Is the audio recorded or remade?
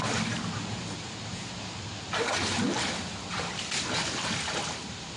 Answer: recorded